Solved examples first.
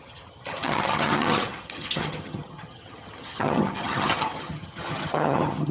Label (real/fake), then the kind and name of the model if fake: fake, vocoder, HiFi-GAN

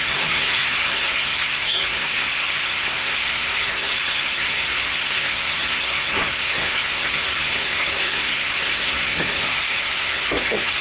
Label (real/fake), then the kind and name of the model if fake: fake, codec, SNAC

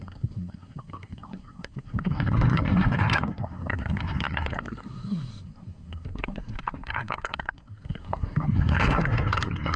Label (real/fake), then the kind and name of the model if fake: fake, codec, SNAC